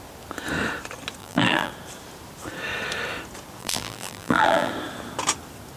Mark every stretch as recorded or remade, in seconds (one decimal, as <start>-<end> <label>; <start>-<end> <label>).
0.0-1.2 recorded; 1.2-1.7 remade; 1.7-3.6 recorded; 3.6-4.7 remade; 4.7-5.8 recorded